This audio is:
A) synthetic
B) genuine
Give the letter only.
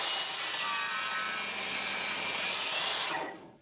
B